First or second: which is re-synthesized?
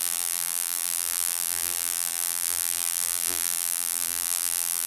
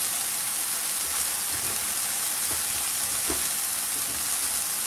first